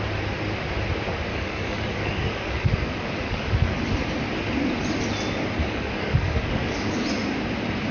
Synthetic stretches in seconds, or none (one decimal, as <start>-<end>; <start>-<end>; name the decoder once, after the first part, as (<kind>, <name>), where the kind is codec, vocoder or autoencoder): 1.3-3.8 (codec, DAC); 5.6-7.0